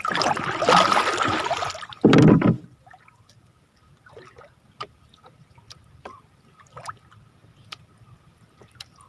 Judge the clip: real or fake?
real